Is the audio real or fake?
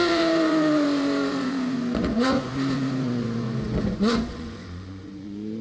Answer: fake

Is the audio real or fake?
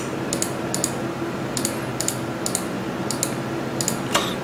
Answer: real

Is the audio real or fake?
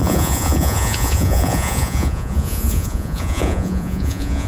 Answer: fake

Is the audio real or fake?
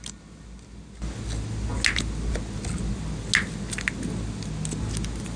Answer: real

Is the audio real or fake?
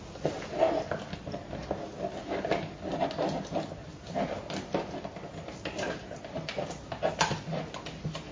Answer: real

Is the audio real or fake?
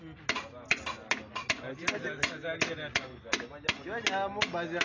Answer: real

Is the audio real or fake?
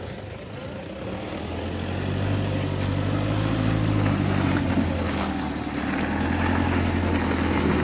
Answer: real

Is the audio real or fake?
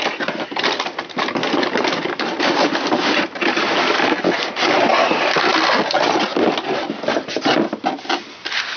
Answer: real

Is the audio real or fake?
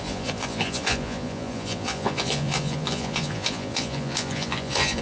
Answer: fake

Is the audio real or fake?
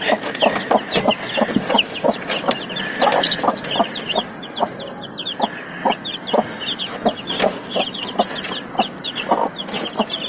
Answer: real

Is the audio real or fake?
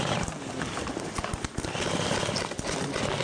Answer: real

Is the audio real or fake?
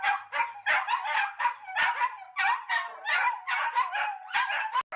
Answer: real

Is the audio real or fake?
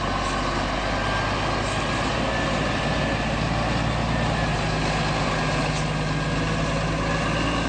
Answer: real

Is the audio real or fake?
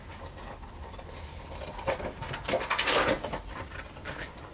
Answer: real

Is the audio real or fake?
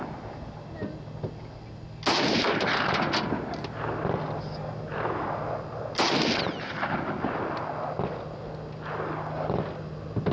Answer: real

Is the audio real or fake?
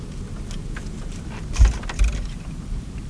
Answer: real